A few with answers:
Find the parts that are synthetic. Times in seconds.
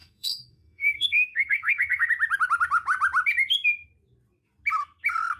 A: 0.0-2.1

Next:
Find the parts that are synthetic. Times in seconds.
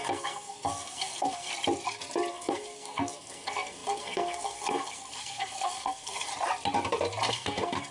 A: 0.0-1.5; 2.3-6.3; 7.3-7.9